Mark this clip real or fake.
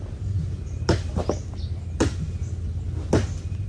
real